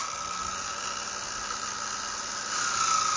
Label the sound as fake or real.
real